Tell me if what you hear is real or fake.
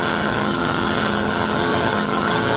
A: fake